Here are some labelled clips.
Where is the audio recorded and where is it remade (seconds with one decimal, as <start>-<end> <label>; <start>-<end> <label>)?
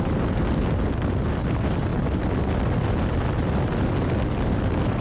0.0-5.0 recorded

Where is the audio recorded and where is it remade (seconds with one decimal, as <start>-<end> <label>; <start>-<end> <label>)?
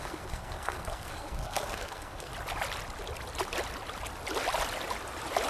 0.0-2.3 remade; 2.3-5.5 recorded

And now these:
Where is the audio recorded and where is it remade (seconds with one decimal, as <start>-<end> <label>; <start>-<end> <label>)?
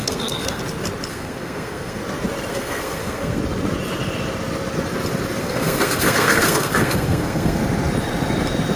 0.0-0.6 remade; 0.6-1.1 recorded; 1.1-2.0 remade; 2.0-2.5 recorded; 2.5-3.4 remade; 3.4-5.4 recorded; 5.4-7.6 remade; 7.6-8.8 recorded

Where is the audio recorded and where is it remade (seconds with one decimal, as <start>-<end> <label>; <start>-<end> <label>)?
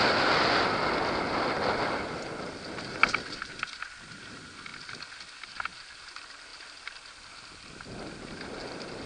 0.0-9.1 recorded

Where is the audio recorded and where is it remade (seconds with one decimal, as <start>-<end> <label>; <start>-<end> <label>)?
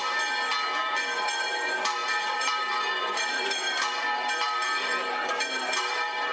0.0-1.2 recorded; 1.2-6.3 remade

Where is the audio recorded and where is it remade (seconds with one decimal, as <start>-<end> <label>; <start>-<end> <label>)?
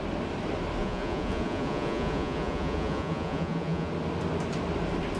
0.0-0.8 recorded; 0.8-3.9 remade; 3.9-5.2 recorded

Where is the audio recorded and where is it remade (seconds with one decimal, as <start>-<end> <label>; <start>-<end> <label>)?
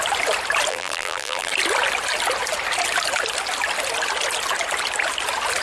0.0-0.7 recorded; 0.7-1.5 remade; 1.5-5.6 recorded